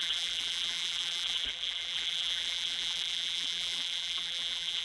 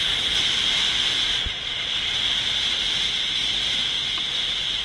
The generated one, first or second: first